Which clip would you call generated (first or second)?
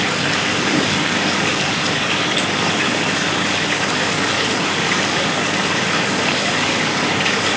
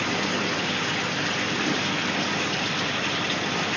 first